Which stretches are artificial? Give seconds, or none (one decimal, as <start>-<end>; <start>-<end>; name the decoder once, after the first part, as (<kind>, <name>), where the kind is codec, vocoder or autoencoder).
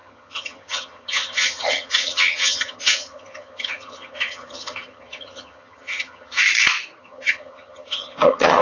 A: 0.0-6.4 (vocoder, HiFi-GAN); 7.0-8.6